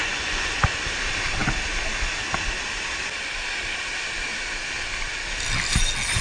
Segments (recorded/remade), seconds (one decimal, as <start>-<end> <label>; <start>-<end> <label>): 0.0-0.7 remade; 0.7-6.2 recorded